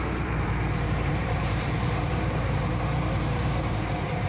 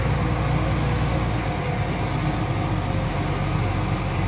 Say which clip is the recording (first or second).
second